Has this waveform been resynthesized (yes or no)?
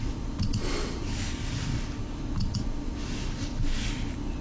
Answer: no